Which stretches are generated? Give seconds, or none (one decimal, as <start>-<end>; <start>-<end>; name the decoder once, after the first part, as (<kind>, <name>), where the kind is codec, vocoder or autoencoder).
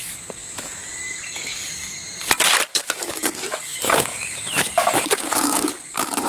0.0-2.0 (codec, DAC); 2.7-6.3